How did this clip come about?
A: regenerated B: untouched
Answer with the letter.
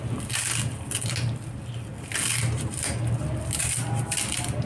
B